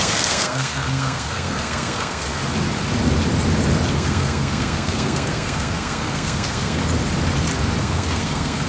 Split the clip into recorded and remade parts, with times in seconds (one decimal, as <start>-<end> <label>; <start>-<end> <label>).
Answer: 0.0-2.4 remade; 2.4-3.9 recorded; 3.9-6.8 remade; 6.8-7.8 recorded; 7.8-8.7 remade